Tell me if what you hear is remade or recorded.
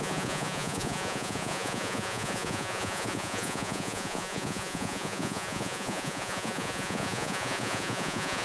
remade